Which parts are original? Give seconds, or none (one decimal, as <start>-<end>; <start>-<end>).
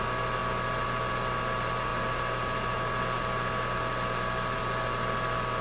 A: 0.0-5.6